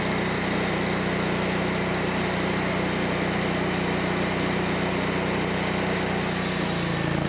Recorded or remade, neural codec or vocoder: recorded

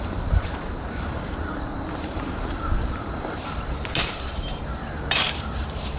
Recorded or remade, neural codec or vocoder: remade, vocoder, BigVGAN v2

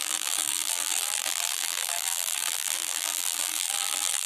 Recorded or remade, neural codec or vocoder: remade, vocoder, BigVGAN v2